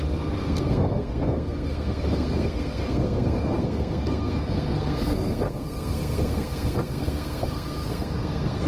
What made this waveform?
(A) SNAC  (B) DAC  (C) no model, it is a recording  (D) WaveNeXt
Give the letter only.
A